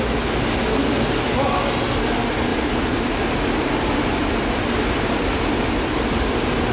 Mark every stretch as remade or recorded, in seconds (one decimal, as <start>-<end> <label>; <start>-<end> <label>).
0.0-2.5 recorded; 2.5-5.6 remade; 5.6-6.7 recorded